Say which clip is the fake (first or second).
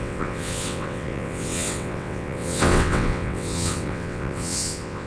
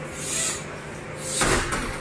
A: first